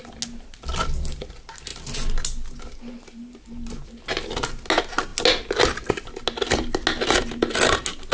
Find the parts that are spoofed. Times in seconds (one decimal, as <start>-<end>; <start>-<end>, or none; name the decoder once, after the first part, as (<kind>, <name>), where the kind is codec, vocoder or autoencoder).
none